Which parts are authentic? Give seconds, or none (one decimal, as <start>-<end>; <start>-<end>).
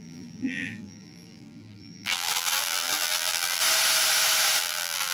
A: 3.6-4.6